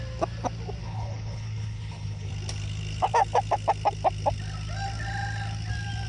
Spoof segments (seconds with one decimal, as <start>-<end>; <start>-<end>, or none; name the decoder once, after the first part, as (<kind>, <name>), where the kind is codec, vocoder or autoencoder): 0.8-2.3 (codec, HILCodec)